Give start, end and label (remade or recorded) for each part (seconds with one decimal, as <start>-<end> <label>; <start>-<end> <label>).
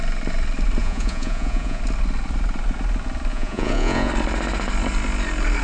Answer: 0.0-0.8 recorded; 0.8-1.8 remade; 1.8-3.3 recorded; 3.3-4.1 remade; 4.1-5.6 recorded